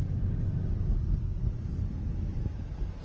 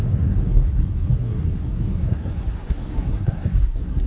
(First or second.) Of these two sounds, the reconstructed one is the second